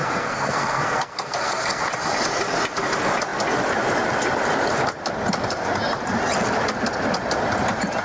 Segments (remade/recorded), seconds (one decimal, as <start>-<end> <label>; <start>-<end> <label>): 0.0-1.8 remade; 1.8-8.0 recorded